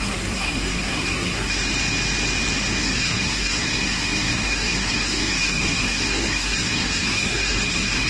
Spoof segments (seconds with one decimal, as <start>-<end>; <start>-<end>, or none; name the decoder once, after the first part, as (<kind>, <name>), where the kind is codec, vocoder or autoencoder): 0.0-1.6 (codec, SNAC); 2.7-8.1